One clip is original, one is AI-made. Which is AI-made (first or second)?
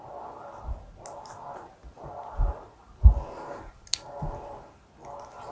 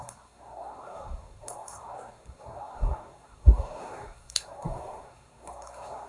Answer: second